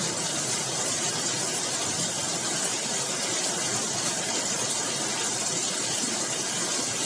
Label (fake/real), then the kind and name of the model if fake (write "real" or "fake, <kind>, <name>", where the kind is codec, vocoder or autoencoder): real